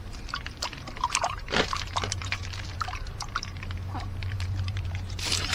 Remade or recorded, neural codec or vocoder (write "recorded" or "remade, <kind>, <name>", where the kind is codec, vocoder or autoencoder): remade, vocoder, BigVGAN v2